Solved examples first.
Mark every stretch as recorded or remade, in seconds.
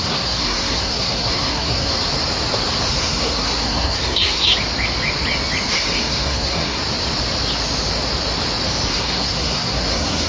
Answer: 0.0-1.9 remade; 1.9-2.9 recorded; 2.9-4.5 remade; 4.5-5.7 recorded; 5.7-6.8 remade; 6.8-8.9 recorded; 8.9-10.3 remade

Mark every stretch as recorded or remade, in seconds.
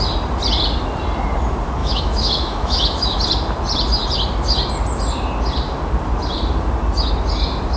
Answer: 0.0-1.8 recorded; 1.8-3.2 remade; 3.2-7.8 recorded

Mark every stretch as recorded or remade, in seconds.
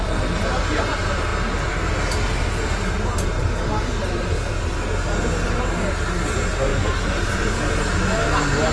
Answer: 0.0-8.7 recorded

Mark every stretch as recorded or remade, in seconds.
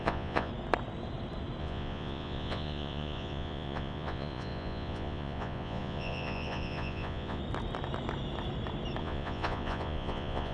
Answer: 0.0-0.5 remade; 0.5-1.6 recorded; 1.6-7.4 remade; 7.4-9.0 recorded; 9.0-10.5 remade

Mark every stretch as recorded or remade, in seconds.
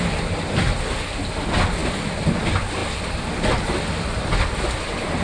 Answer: 0.0-5.2 remade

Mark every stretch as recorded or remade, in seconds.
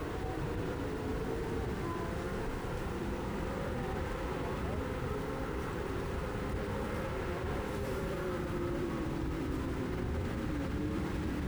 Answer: 0.0-1.1 remade; 1.1-2.5 recorded; 2.5-11.5 remade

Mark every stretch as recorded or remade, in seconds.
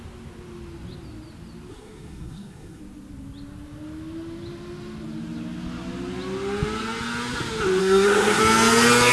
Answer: 0.0-1.7 recorded; 1.7-2.8 remade; 2.8-7.8 recorded; 7.8-8.4 remade; 8.4-9.1 recorded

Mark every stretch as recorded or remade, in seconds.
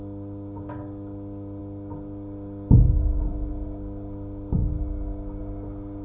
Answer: 0.0-6.0 recorded